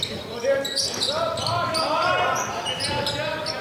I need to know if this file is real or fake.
real